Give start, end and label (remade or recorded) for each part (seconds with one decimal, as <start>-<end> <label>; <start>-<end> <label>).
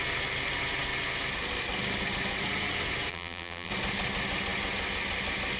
0.0-3.1 recorded; 3.1-3.7 remade; 3.7-5.6 recorded